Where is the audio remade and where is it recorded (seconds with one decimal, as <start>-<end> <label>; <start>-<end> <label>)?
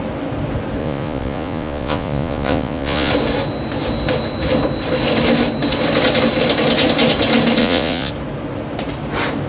0.0-0.8 recorded; 0.8-3.1 remade; 3.1-7.6 recorded; 7.6-8.1 remade; 8.1-9.5 recorded